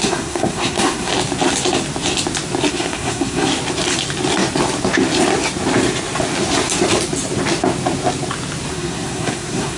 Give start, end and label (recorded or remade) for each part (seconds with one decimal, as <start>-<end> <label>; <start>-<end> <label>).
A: 0.0-1.1 remade; 1.1-2.7 recorded; 2.7-3.5 remade; 3.5-8.7 recorded; 8.7-9.8 remade